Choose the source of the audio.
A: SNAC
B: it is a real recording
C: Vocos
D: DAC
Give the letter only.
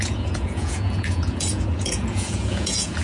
C